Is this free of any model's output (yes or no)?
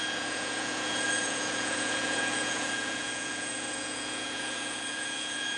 no